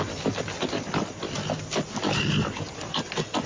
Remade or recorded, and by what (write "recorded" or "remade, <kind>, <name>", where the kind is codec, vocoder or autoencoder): recorded